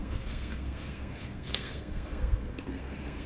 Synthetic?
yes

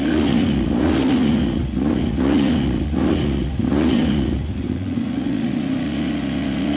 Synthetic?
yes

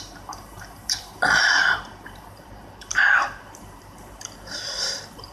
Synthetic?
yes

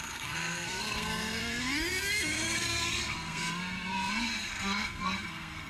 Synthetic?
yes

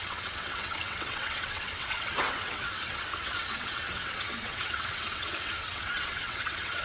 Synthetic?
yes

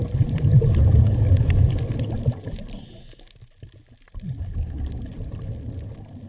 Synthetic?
no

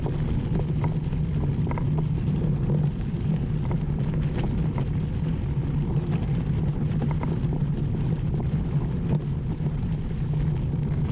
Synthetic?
no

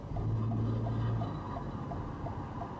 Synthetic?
no